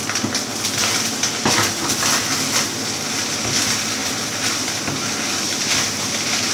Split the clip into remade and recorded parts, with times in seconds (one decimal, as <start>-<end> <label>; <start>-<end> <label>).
0.0-0.5 remade; 0.5-4.0 recorded; 4.0-5.6 remade; 5.6-6.5 recorded